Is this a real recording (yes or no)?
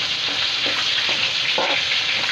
yes